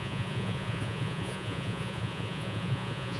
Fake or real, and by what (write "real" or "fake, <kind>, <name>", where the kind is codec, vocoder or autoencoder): fake, vocoder, Vocos